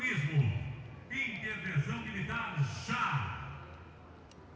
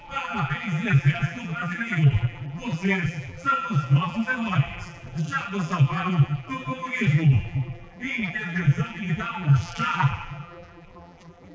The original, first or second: first